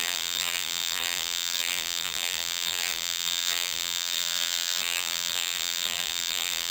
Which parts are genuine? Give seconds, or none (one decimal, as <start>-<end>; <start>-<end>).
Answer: none

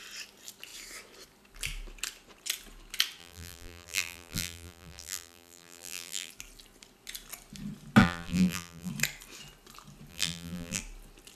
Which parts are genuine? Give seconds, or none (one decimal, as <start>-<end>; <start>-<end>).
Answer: 0.0-3.2; 6.3-8.0; 8.9-10.1; 10.8-11.4

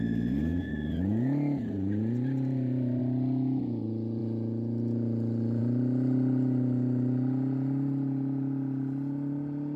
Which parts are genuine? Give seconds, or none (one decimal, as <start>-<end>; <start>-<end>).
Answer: 0.0-0.5; 3.0-9.8